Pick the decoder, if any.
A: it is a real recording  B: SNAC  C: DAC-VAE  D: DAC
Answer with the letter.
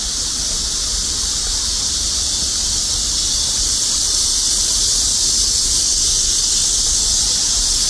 A